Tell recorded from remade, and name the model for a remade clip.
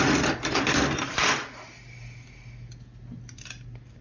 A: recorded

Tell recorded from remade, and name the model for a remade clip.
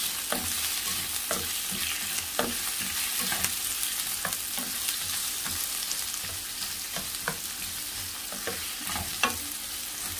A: recorded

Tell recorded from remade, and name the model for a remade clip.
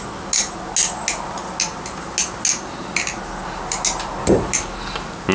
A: recorded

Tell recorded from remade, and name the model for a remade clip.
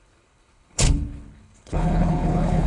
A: remade, codec, HILCodec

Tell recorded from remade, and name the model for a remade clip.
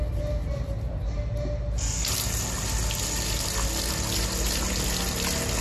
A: recorded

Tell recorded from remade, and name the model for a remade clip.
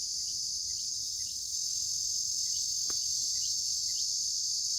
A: remade, vocoder, BigVGAN v2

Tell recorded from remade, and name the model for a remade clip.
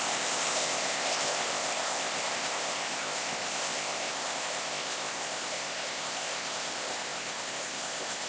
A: remade, codec, ZipCodec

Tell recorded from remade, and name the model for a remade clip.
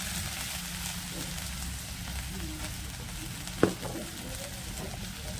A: recorded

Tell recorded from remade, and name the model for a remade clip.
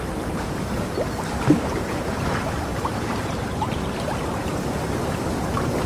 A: remade, vocoder, BigVGAN v2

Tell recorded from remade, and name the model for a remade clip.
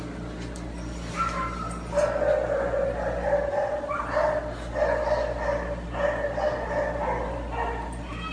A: recorded